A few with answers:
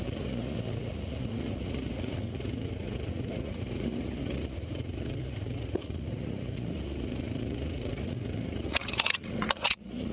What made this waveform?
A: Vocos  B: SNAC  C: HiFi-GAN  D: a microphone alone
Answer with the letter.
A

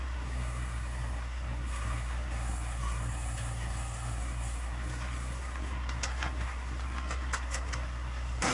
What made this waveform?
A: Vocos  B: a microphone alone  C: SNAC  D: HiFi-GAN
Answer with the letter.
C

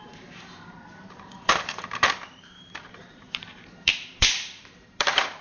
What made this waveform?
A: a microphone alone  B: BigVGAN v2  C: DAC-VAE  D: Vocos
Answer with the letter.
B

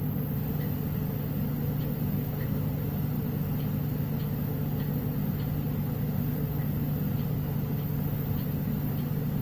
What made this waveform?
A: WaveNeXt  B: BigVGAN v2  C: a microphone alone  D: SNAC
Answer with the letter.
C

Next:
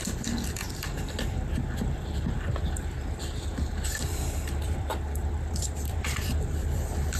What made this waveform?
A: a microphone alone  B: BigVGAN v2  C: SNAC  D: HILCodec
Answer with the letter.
B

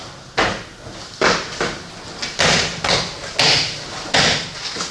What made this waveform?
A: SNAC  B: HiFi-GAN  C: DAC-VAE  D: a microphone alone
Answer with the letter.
D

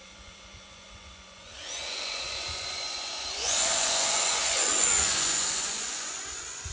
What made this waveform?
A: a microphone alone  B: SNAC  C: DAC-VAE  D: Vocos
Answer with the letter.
D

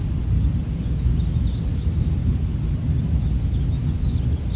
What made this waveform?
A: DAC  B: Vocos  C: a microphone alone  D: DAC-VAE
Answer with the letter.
C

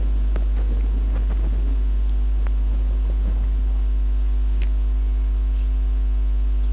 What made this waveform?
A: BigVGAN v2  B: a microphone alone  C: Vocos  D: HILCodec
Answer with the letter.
B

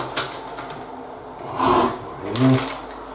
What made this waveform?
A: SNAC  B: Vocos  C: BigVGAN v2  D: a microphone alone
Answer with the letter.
D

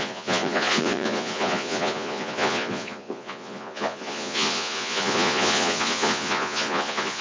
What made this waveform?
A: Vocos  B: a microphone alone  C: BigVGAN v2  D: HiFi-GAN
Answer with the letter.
A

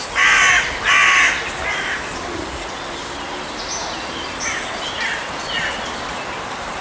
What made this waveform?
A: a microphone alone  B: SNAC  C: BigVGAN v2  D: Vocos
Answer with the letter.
A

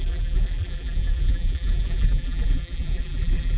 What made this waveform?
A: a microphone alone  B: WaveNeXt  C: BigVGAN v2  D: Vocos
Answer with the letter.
C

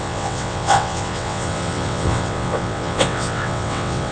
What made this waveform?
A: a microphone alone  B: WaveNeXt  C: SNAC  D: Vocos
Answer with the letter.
B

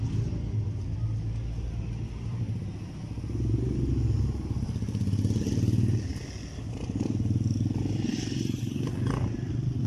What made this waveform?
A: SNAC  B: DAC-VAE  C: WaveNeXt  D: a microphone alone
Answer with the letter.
D